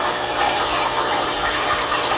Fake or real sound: real